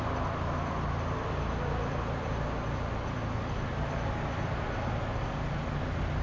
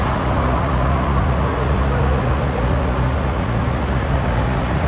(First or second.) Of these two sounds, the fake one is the second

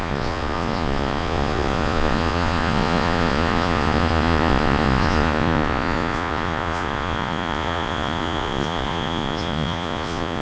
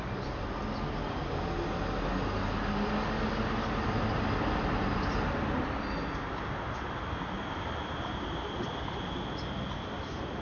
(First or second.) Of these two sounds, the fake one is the first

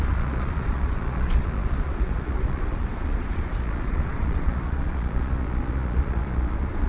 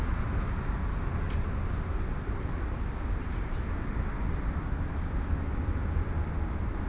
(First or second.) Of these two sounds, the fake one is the first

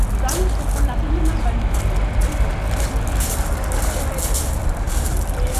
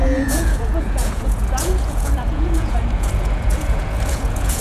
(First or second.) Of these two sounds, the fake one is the second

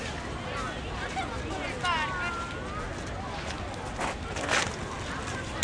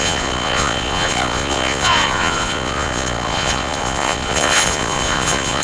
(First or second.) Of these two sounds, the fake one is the second